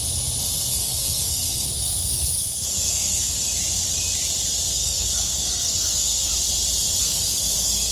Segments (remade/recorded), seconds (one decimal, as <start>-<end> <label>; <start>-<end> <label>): 0.0-0.7 recorded; 0.7-3.4 remade; 3.4-4.7 recorded; 4.7-6.3 remade; 6.3-7.0 recorded; 7.0-7.9 remade